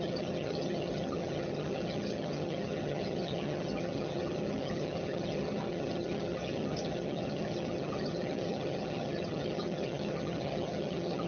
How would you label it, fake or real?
fake